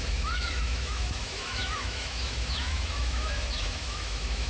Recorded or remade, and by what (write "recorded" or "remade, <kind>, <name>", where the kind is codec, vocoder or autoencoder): remade, autoencoder, DAC-VAE